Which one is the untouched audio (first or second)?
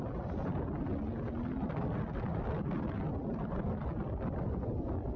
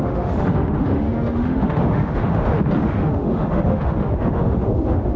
first